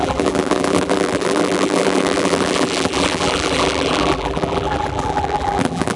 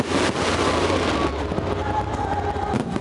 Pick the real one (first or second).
second